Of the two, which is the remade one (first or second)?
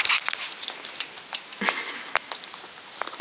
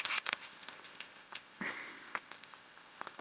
second